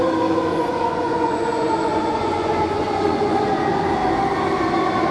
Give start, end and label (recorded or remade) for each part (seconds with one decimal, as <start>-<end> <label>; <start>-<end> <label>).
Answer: 0.0-0.5 recorded; 0.5-3.6 remade; 3.6-5.1 recorded